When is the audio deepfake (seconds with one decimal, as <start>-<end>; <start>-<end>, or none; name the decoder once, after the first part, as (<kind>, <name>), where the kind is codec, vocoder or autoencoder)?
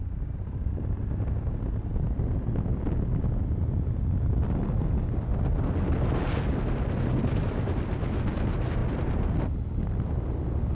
2.7-3.2 (vocoder, BigVGAN v2); 8.8-9.4